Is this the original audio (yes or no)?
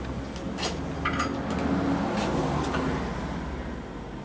yes